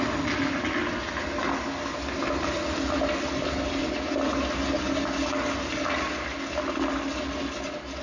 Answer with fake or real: real